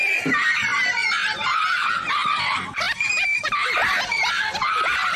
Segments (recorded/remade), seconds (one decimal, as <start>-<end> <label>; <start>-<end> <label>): 0.0-5.2 recorded